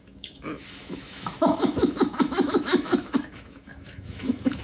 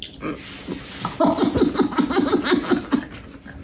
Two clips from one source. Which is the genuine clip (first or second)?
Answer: second